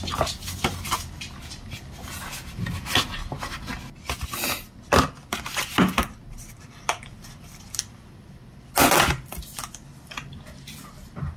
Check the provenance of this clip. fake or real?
real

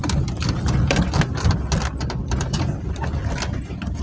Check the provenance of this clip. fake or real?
real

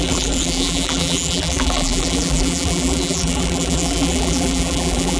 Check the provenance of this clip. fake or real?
fake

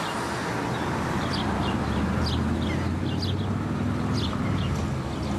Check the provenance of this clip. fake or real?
real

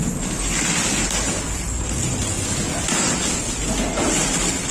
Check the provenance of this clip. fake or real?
real